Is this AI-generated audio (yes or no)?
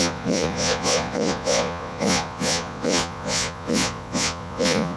yes